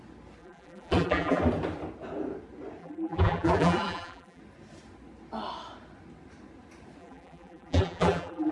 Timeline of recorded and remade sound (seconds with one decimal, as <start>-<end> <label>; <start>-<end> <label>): 0.0-0.4 recorded; 0.4-1.4 remade; 1.4-2.8 recorded; 2.8-4.4 remade; 4.4-7.0 recorded; 7.0-8.5 remade